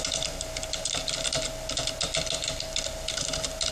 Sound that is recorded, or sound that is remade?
recorded